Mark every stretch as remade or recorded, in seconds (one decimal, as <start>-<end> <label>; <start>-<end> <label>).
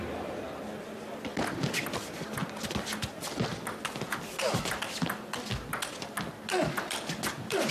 0.0-7.7 recorded